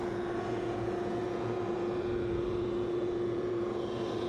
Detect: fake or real fake